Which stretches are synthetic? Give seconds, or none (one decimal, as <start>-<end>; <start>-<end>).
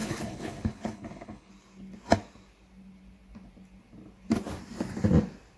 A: 0.0-1.5